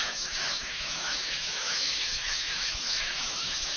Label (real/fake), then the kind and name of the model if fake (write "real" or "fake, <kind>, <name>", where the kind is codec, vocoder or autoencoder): fake, autoencoder, DAC-VAE